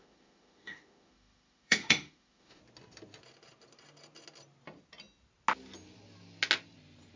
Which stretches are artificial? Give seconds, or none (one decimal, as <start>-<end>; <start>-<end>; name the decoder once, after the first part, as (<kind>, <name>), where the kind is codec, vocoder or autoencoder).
0.0-2.6 (autoencoder, DAC-VAE)